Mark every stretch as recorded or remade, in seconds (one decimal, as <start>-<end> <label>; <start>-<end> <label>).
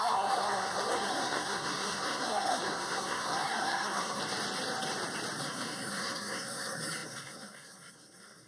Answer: 0.0-4.2 remade; 4.2-5.4 recorded; 5.4-8.5 remade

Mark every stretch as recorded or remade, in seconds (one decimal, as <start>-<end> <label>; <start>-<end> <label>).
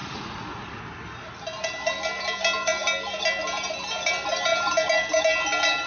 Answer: 0.0-0.8 remade; 0.8-5.9 recorded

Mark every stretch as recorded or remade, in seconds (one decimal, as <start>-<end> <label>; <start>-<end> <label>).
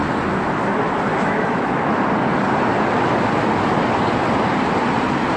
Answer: 0.0-1.1 recorded; 1.1-2.0 remade; 2.0-5.4 recorded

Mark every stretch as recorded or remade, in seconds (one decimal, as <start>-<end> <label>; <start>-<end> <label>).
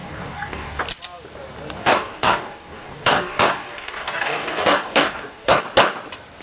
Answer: 0.0-0.8 remade; 0.8-1.8 recorded; 1.8-5.6 remade; 5.6-6.4 recorded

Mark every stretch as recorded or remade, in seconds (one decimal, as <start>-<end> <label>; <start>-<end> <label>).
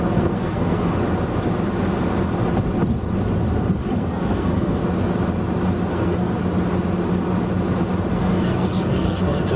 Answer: 0.0-1.0 remade; 1.0-3.8 recorded; 3.8-4.8 remade; 4.8-5.9 recorded; 5.9-6.4 remade; 6.4-8.1 recorded; 8.1-9.6 remade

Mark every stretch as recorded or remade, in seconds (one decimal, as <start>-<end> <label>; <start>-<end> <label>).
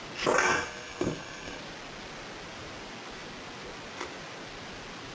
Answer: 0.0-0.4 recorded; 0.4-1.6 remade; 1.6-5.1 recorded